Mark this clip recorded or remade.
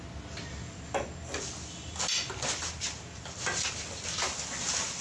recorded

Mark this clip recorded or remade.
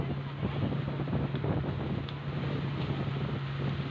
recorded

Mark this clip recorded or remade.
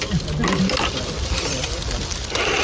recorded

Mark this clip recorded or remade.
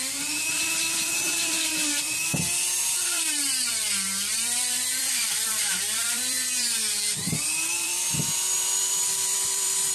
remade